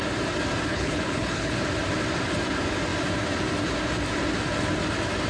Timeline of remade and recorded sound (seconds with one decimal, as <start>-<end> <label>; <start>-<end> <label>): 0.0-0.7 recorded; 0.7-1.6 remade; 1.6-5.3 recorded